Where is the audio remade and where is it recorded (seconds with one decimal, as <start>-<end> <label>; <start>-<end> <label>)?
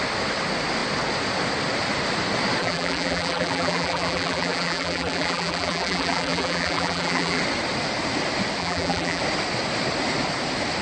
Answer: 0.0-2.6 recorded; 2.6-7.4 remade; 7.4-8.6 recorded; 8.6-9.2 remade; 9.2-10.8 recorded